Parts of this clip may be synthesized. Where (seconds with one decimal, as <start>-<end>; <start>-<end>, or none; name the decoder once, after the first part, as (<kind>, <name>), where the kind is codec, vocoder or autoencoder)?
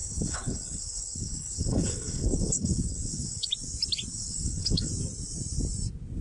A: 0.0-3.5 (codec, HILCodec); 4.1-4.9